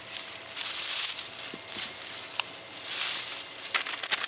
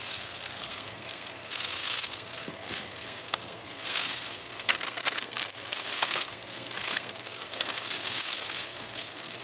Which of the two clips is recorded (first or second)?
first